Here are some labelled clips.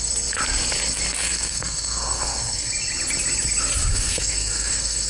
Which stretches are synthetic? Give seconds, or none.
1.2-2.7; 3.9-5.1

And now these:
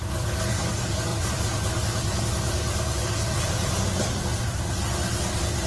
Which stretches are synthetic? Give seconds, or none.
1.1-2.2; 3.0-4.2

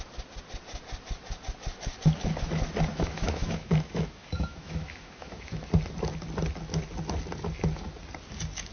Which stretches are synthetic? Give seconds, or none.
2.9-5.7

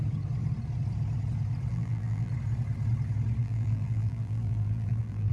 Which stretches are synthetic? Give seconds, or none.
1.7-2.3; 3.4-5.3

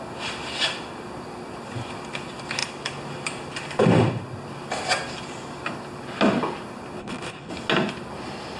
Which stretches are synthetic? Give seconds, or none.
7.0-7.5

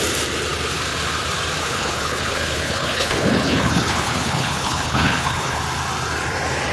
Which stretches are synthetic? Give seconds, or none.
1.6-5.6